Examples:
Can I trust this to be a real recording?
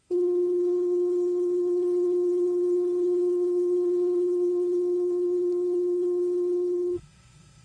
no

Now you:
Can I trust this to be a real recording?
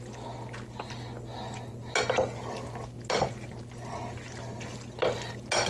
yes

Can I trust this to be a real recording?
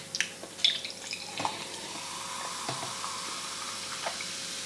yes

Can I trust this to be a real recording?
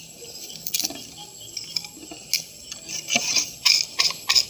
yes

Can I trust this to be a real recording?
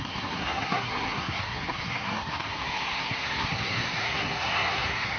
no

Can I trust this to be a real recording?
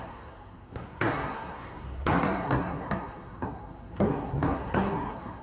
no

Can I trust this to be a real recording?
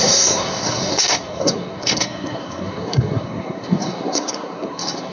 no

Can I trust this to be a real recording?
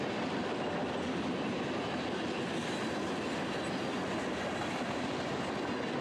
yes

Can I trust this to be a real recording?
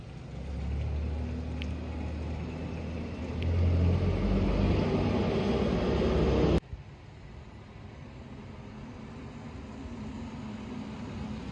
yes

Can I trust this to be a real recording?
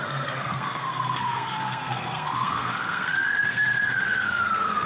no